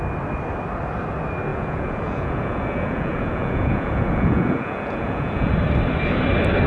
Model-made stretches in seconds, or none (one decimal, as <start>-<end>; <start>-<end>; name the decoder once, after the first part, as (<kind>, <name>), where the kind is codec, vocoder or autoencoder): 1.5-5.5 (vocoder, Vocos)

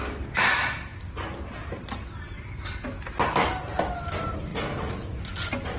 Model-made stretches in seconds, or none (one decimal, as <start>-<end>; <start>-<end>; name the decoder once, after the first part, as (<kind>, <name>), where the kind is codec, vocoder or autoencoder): none

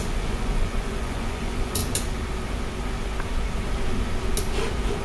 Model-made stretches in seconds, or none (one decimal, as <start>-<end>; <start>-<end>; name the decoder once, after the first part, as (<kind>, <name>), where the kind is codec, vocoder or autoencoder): 0.0-1.8 (vocoder, Vocos)

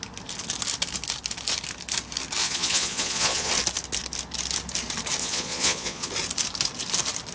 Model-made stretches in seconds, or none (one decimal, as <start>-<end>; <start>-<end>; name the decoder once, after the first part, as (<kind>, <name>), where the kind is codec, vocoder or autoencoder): 2.4-3.5 (vocoder, Vocos); 5.2-6.1

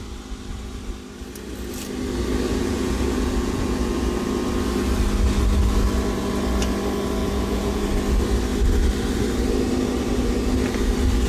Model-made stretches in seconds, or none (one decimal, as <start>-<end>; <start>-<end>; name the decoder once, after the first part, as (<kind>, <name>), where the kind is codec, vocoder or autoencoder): 2.5-4.1 (vocoder, Vocos); 7.2-7.8

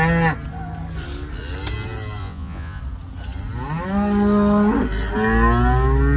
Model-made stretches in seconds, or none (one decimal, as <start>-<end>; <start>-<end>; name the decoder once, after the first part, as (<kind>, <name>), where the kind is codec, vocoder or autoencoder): 2.2-2.8 (vocoder, Vocos)